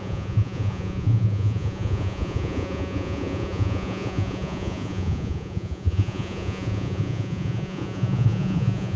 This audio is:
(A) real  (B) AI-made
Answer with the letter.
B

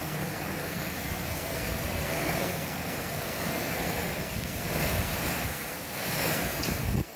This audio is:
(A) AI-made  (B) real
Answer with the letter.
A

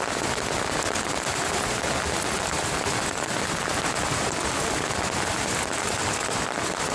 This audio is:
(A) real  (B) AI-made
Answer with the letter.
A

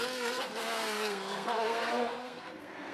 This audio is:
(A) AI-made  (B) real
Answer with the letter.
A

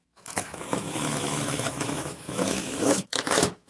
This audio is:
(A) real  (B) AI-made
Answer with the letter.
B